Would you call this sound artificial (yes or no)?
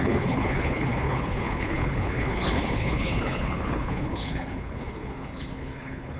yes